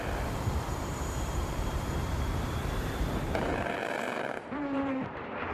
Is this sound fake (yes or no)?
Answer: yes